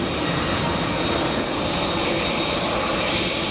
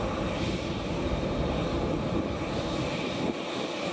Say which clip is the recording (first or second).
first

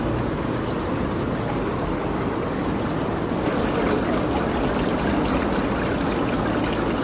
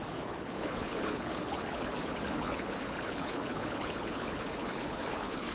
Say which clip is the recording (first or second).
first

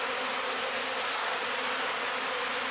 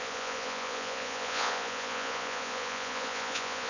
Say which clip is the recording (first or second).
first